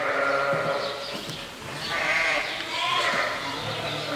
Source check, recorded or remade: recorded